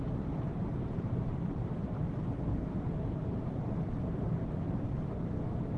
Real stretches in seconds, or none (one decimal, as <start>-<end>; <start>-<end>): 0.0-0.5; 1.7-2.5; 3.7-5.8